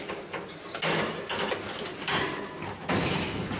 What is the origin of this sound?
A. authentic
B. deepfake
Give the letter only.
A